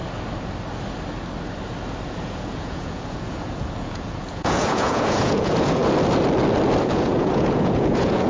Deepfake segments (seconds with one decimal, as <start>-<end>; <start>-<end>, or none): 2.1-5.8; 6.8-8.3